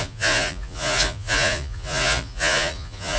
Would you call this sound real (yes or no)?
no